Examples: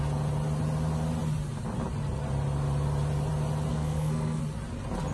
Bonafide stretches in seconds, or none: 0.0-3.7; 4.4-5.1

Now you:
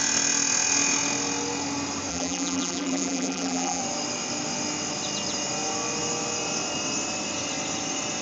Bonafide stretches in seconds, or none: 0.0-2.1; 3.8-8.2

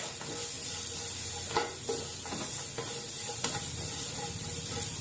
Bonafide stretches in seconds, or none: 0.0-5.0

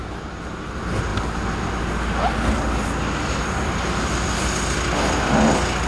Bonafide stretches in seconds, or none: 0.0-5.9

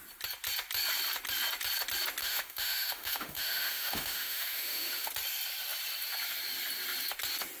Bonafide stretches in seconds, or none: 0.0-2.2; 5.1-7.6

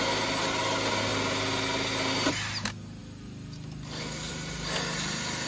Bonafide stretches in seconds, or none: 0.0-5.5

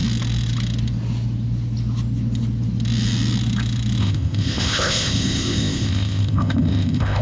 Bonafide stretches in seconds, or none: 0.0-4.0